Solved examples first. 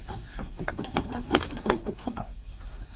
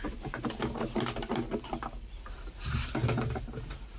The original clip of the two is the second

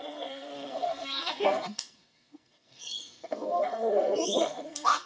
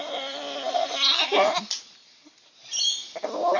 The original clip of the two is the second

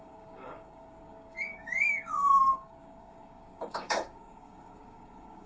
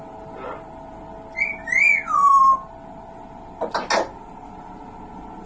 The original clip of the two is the second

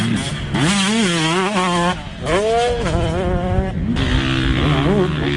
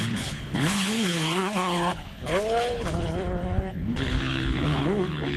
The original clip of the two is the first